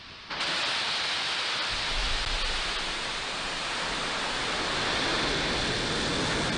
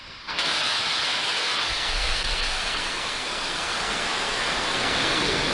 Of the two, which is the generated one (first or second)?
second